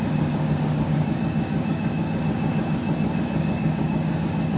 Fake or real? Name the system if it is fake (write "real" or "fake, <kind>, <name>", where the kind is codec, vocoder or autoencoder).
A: fake, codec, DAC